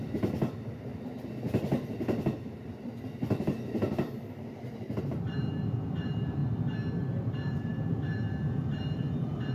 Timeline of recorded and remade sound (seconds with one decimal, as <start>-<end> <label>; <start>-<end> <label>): 0.0-0.9 remade; 0.9-5.0 recorded; 5.0-6.4 remade; 6.4-7.0 recorded; 7.0-9.5 remade